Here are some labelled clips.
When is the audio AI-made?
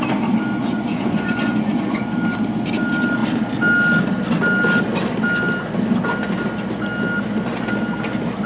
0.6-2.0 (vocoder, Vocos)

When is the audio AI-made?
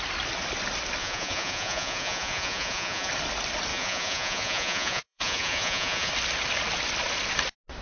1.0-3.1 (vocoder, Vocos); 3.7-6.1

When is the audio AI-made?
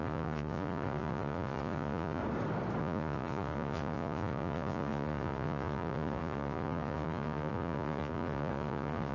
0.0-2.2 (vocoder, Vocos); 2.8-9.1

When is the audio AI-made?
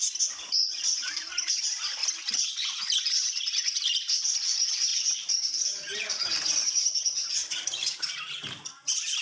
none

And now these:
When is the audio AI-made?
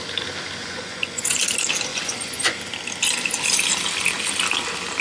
0.6-1.4 (vocoder, Vocos); 1.9-2.6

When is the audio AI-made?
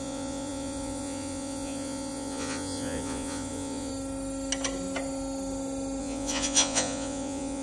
0.0-3.9 (vocoder, Vocos); 6.0-7.6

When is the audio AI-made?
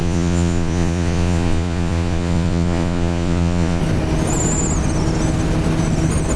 0.0-3.8 (vocoder, Vocos)